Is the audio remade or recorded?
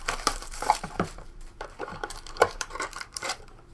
remade